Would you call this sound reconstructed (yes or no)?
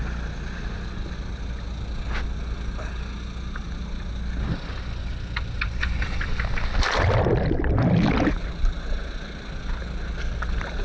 no